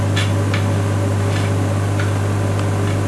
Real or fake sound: real